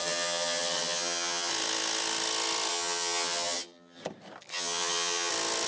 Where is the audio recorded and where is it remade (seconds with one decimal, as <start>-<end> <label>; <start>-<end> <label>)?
0.0-1.5 remade; 1.5-2.7 recorded; 2.7-4.0 remade; 4.0-4.5 recorded; 4.5-5.3 remade; 5.3-5.7 recorded